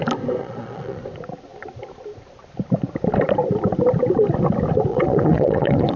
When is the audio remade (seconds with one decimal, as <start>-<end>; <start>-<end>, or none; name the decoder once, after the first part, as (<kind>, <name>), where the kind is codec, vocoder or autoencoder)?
0.4-1.0 (vocoder, Vocos); 4.9-6.0